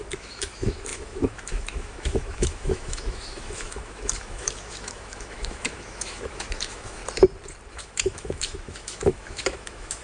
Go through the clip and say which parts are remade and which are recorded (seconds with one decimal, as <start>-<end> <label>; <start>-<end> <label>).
0.0-7.0 remade; 7.0-7.7 recorded; 7.7-10.0 remade